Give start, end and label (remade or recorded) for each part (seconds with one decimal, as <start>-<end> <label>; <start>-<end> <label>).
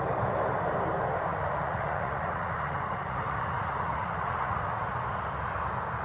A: 0.0-1.3 recorded; 1.3-4.9 remade; 4.9-6.0 recorded